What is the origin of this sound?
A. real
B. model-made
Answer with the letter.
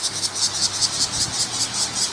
A